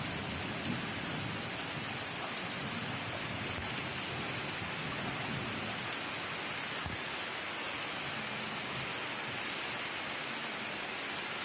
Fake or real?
real